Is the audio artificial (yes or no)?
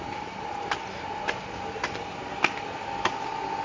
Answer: no